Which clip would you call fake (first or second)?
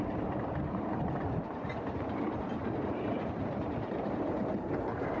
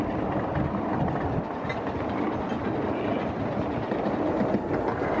first